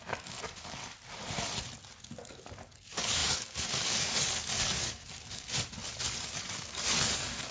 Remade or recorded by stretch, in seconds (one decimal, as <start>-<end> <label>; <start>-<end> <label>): 0.0-0.8 remade; 0.8-2.0 recorded; 2.0-5.5 remade; 5.5-6.2 recorded; 6.2-7.5 remade